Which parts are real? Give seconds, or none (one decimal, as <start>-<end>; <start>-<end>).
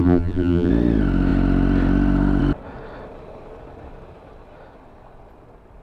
0.7-5.8